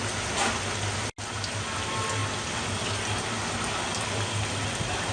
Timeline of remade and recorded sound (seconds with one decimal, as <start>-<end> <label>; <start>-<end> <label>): 0.0-5.1 recorded